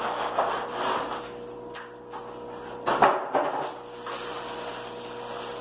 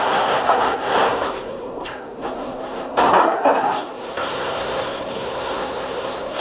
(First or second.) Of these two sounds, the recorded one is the first